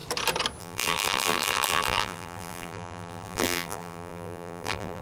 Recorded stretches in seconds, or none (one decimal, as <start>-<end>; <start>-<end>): 0.0-0.6